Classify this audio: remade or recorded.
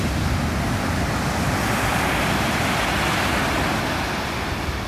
recorded